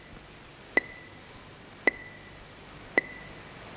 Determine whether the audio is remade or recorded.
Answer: recorded